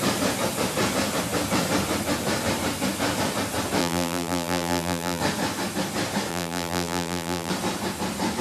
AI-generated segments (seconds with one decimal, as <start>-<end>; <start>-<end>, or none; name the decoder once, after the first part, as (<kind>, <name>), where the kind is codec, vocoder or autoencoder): 3.8-5.2 (vocoder, BigVGAN v2); 6.3-7.5